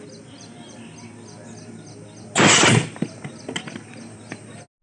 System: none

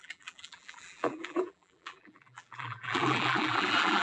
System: vocoder, BigVGAN v2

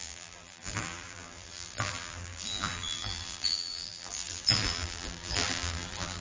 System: vocoder, BigVGAN v2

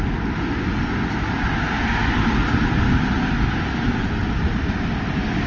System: none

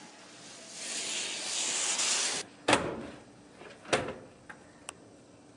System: none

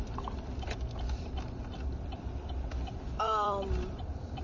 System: vocoder, BigVGAN v2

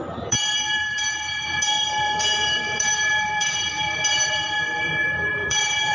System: vocoder, BigVGAN v2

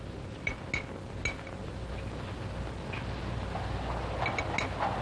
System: none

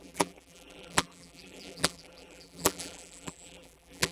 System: vocoder, BigVGAN v2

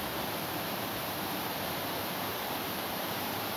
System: vocoder, BigVGAN v2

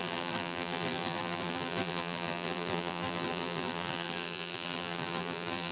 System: vocoder, BigVGAN v2